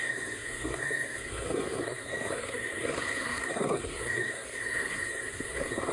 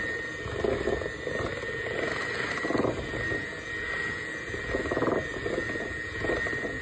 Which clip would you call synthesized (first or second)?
first